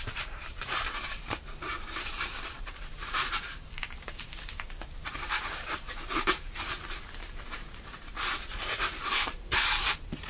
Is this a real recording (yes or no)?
no